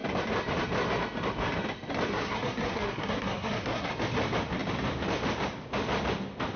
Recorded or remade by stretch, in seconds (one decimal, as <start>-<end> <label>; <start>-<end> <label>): 0.0-2.1 recorded; 2.1-3.9 remade; 3.9-6.6 recorded